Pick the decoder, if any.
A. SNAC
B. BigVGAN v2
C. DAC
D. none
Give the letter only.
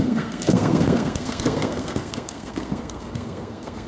A